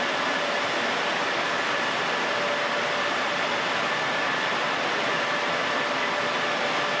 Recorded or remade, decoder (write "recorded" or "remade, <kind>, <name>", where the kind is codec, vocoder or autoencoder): recorded